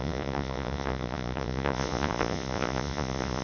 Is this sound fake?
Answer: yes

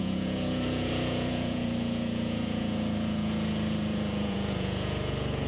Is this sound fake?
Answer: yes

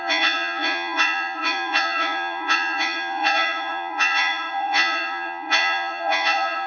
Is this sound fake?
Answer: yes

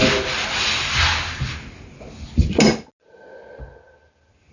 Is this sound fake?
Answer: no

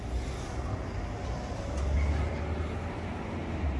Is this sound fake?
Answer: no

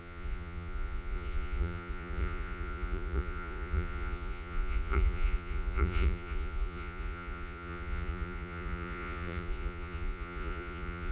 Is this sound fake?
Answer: yes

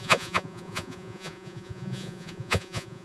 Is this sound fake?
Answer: yes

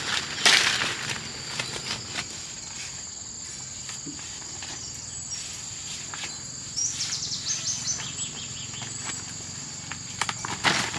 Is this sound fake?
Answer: no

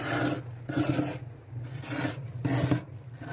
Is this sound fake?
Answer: no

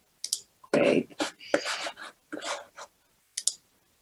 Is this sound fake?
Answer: no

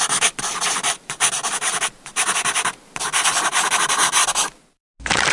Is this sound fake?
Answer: no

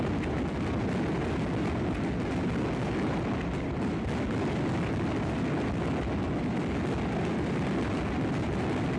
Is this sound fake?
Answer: no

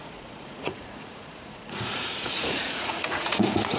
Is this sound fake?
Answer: yes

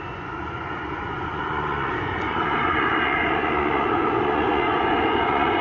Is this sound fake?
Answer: yes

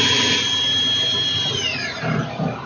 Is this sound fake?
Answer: no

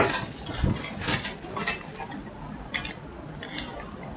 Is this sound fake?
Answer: no